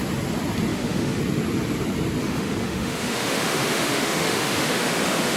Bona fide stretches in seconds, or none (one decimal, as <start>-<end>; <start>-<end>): 0.0-0.7; 1.2-2.2